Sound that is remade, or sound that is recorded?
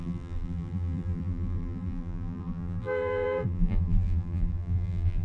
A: remade